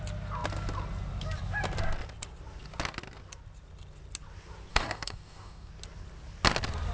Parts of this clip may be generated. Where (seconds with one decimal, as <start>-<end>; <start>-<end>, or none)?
4.7-5.7